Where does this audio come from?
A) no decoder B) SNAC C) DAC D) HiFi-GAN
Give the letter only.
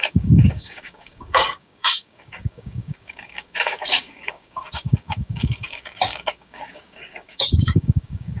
C